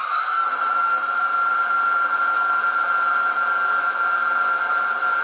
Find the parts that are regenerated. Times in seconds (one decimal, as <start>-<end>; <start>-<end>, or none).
none